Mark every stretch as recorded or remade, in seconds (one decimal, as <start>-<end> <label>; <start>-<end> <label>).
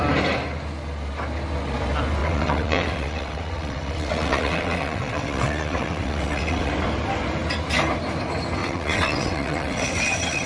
0.0-2.2 recorded; 2.2-6.7 remade; 6.7-8.6 recorded; 8.6-10.5 remade